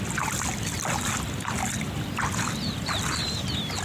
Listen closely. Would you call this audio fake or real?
real